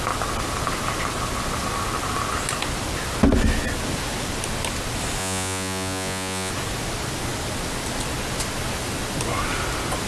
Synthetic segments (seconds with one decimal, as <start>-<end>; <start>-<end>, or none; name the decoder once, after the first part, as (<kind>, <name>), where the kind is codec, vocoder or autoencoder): 5.2-6.5 (vocoder, Vocos)